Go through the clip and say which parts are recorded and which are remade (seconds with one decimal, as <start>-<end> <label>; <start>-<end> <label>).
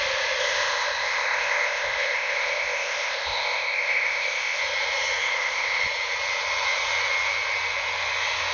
0.0-0.4 recorded; 0.4-4.6 remade; 4.6-5.2 recorded; 5.2-5.8 remade; 5.8-8.5 recorded